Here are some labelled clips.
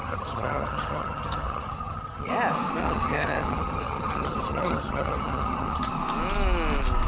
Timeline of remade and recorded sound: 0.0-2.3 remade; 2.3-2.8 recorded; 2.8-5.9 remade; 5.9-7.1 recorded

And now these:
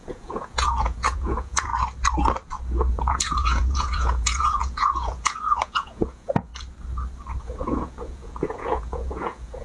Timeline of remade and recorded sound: 0.0-1.7 remade; 1.7-2.9 recorded; 2.9-6.5 remade; 6.5-7.4 recorded; 7.4-9.6 remade

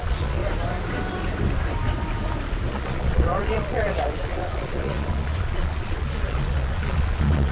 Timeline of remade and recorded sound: 0.0-0.4 remade; 0.4-2.7 recorded; 2.7-7.5 remade

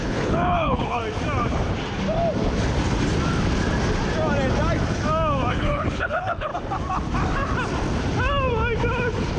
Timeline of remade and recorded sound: 0.0-1.0 remade; 1.0-5.5 recorded; 5.5-6.5 remade; 6.5-9.4 recorded

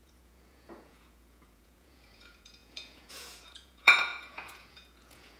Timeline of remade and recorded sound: 0.0-5.4 remade